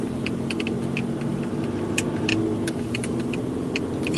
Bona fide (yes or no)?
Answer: yes